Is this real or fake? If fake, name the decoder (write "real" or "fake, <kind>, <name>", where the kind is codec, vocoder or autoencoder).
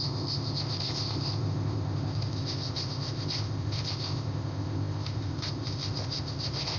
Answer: fake, codec, ZipCodec